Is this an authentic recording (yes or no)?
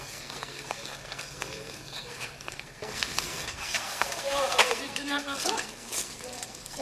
no